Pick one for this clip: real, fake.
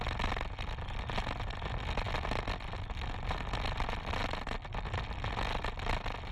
real